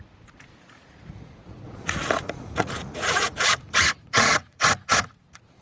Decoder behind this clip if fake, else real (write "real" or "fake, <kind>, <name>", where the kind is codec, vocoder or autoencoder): fake, vocoder, Vocos